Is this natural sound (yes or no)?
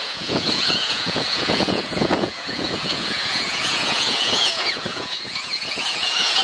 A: no